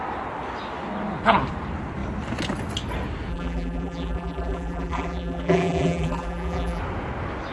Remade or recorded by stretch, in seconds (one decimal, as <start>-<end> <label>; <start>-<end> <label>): 0.0-3.3 recorded; 3.3-6.8 remade; 6.8-7.5 recorded